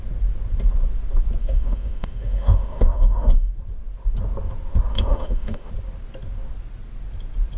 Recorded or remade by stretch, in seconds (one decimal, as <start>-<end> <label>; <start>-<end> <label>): 0.0-1.4 recorded; 1.4-3.5 remade; 3.5-4.9 recorded; 4.9-5.7 remade; 5.7-7.6 recorded